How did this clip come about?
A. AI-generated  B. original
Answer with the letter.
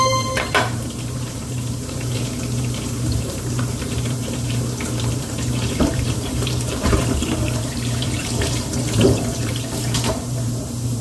A